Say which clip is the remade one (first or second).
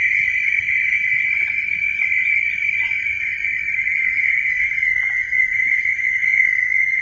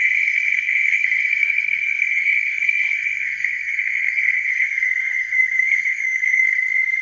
second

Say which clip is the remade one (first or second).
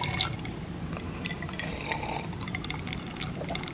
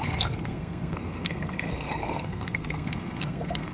second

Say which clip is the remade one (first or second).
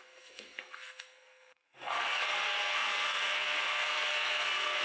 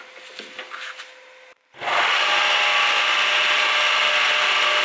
first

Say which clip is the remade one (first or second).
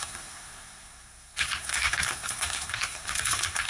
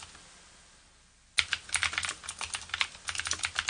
first